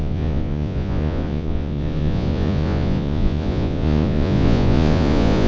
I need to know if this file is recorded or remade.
remade